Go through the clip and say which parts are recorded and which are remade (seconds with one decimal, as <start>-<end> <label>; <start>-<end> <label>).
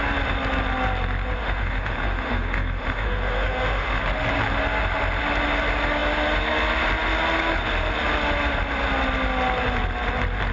0.0-1.4 recorded; 1.4-4.0 remade; 4.0-10.5 recorded